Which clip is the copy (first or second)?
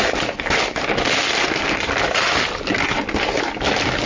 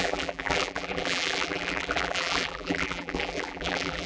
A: second